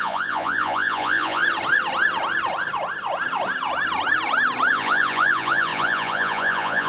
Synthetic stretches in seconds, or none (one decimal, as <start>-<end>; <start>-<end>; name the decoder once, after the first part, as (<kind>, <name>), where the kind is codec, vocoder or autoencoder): 0.0-1.4 (vocoder, Vocos); 4.7-6.9